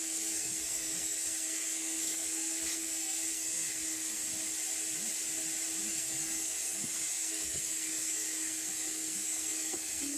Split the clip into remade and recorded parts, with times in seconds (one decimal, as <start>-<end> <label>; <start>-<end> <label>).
0.0-4.2 remade; 4.2-5.9 recorded; 5.9-10.2 remade